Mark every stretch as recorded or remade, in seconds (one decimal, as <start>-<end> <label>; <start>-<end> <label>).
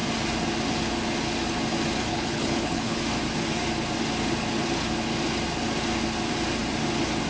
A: 0.0-2.1 recorded; 2.1-3.0 remade; 3.0-7.3 recorded